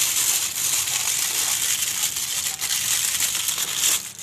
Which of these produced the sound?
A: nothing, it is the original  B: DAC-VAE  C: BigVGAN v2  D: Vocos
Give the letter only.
A